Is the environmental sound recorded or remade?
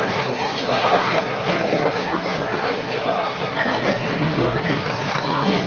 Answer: remade